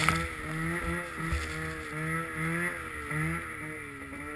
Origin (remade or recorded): recorded